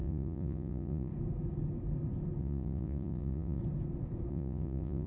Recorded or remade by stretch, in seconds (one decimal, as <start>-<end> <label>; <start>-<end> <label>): 0.0-1.1 remade; 1.1-2.4 recorded; 2.4-3.6 remade; 3.6-4.3 recorded; 4.3-5.1 remade